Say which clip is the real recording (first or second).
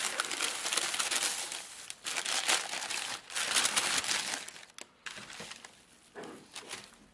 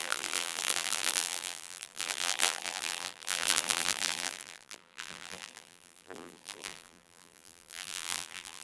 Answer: first